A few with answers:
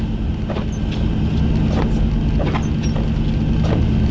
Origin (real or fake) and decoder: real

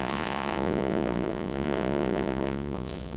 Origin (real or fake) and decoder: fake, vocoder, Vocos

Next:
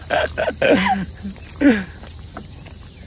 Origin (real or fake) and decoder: real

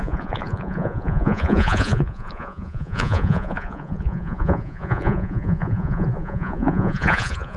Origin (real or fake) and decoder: fake, vocoder, Vocos